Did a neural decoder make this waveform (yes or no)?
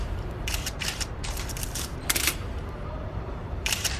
yes